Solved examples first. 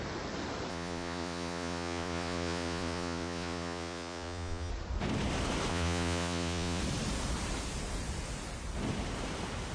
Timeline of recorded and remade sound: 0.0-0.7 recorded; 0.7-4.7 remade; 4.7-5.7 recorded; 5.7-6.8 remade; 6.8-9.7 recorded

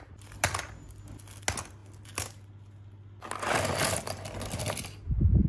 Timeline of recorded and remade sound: 0.0-5.5 recorded

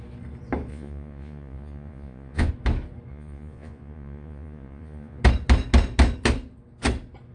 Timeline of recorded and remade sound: 0.0-0.7 recorded; 0.7-2.5 remade; 2.5-3.1 recorded; 3.1-5.2 remade; 5.2-7.3 recorded

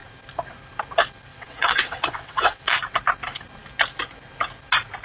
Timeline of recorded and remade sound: 0.0-1.3 recorded; 1.3-2.8 remade; 2.8-5.0 recorded

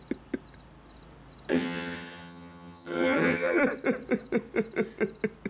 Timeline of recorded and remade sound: 0.0-1.5 recorded; 1.5-3.6 remade; 3.6-5.5 recorded

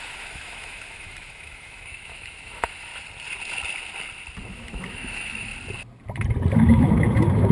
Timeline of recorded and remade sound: 0.0-2.9 remade; 2.9-4.5 recorded; 4.5-5.5 remade; 5.5-6.5 recorded; 6.5-7.5 remade

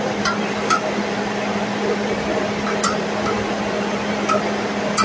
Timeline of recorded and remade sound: 0.0-5.0 recorded

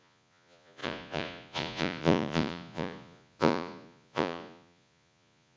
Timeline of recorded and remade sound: 0.0-5.6 remade